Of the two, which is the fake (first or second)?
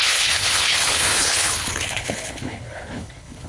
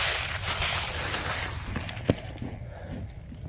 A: first